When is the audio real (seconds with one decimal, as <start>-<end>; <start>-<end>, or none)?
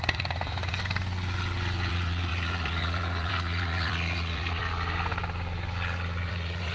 0.8-1.9; 4.6-6.3